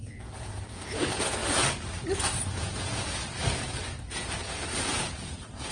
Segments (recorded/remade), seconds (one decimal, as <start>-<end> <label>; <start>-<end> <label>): 0.0-1.4 remade; 1.4-2.6 recorded; 2.6-3.2 remade; 3.2-4.1 recorded; 4.1-5.7 remade